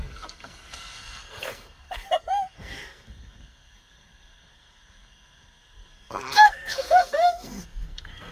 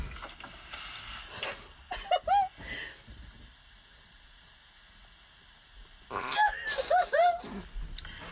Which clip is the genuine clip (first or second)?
second